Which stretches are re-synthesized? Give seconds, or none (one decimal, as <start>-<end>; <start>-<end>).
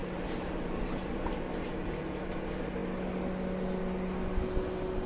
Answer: 0.0-1.3